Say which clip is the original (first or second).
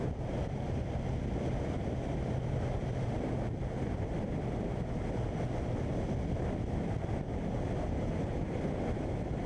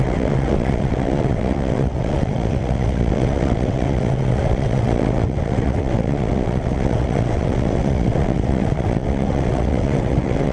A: first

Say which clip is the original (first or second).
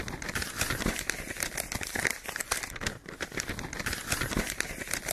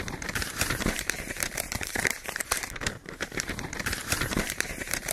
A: first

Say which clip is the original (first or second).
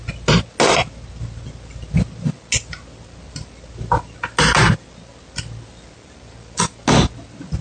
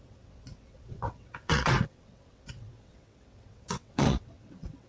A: first